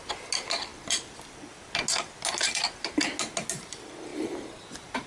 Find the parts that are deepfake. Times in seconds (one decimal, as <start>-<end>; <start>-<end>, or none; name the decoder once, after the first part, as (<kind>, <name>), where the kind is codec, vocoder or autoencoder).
none